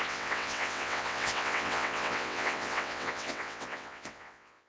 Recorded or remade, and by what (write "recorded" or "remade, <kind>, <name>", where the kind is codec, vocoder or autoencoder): remade, vocoder, WaveNeXt